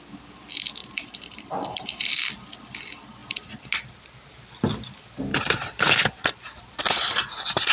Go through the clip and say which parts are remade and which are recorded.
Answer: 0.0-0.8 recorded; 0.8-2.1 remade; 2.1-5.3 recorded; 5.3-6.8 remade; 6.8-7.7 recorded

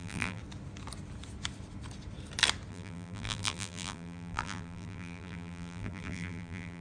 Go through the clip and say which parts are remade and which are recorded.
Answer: 0.0-0.4 remade; 0.4-2.7 recorded; 2.7-6.8 remade

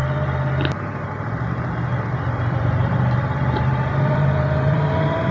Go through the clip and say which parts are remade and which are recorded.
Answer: 0.0-1.9 recorded; 1.9-5.3 remade

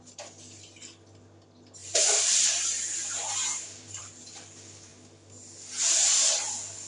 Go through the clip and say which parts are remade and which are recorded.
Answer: 0.0-1.8 recorded; 1.8-4.0 remade; 4.0-6.9 recorded

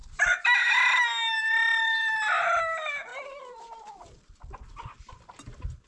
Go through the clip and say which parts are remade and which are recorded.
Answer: 0.0-3.1 recorded; 3.1-5.1 remade; 5.1-5.9 recorded

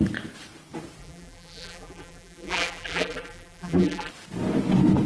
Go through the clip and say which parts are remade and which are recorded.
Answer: 0.0-1.0 recorded; 1.0-4.1 remade; 4.1-5.1 recorded